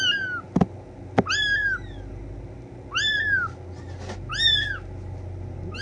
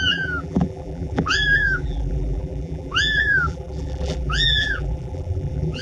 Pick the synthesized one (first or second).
second